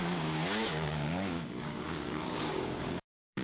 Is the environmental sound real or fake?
fake